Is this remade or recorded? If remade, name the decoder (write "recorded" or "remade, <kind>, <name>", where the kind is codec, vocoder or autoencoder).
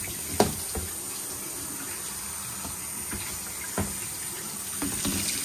recorded